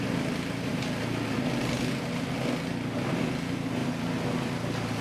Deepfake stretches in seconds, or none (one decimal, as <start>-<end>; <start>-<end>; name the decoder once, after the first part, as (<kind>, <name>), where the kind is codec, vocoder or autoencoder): none